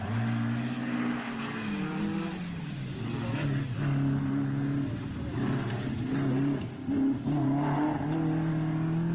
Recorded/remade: recorded